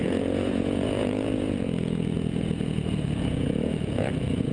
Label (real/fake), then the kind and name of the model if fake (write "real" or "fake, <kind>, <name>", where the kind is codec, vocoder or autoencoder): fake, vocoder, Vocos